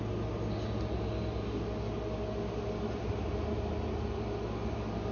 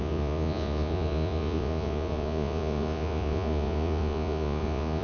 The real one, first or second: first